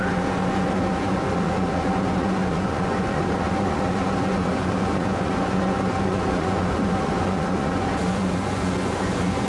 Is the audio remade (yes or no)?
yes